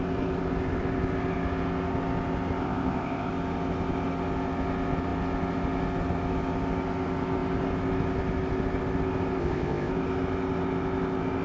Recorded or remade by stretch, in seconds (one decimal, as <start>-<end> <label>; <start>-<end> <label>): 0.0-2.6 recorded; 2.6-3.3 remade; 3.3-9.4 recorded; 9.4-9.9 remade; 9.9-11.4 recorded